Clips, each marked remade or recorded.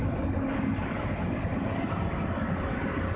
recorded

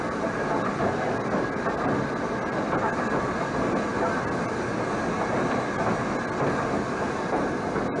recorded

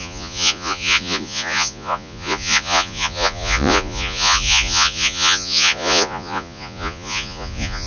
remade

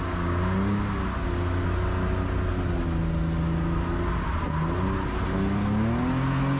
recorded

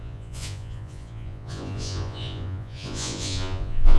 remade